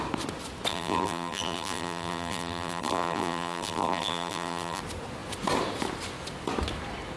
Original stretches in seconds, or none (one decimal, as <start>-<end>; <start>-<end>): 0.0-0.7; 4.8-7.2

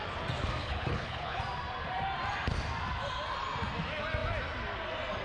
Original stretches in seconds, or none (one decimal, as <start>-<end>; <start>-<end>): 0.0-0.6; 1.4-5.2

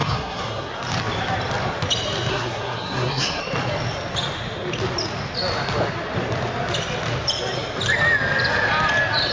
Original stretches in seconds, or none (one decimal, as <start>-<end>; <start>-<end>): 0.7-2.3; 3.4-9.3

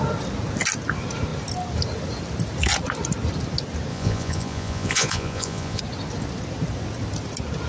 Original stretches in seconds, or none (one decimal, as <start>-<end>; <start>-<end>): 0.0-3.9; 5.8-7.7

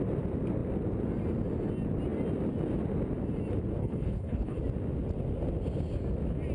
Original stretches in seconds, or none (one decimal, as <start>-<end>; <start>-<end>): 0.0-3.8; 4.6-6.5

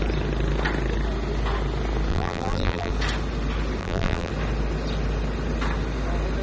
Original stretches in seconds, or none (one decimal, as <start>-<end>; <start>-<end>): 0.0-2.1; 2.9-3.8; 4.3-6.4

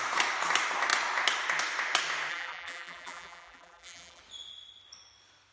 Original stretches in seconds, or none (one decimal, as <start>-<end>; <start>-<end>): 0.0-2.3; 4.2-5.5